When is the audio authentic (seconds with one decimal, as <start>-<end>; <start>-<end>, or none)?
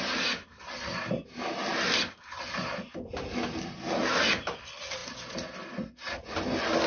0.0-6.9